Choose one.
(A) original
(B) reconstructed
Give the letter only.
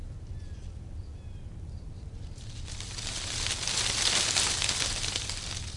A